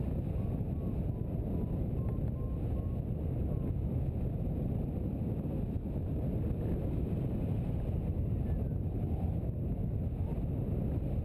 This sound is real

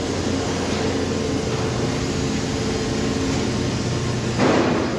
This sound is real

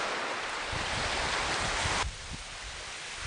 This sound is real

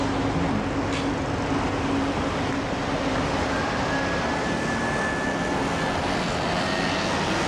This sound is real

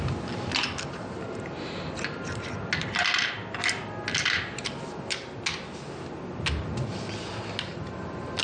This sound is real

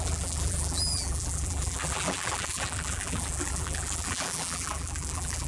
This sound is fake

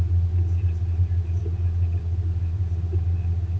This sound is real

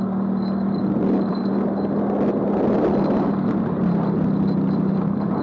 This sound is real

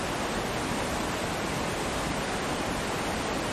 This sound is real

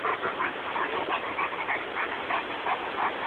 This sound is fake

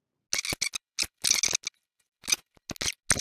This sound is real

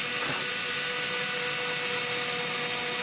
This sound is real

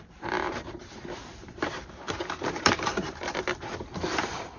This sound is fake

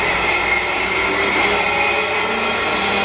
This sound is real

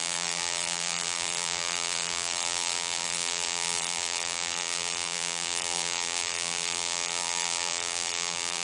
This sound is fake